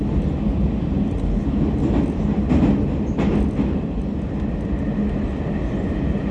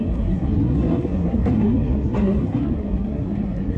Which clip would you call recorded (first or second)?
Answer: first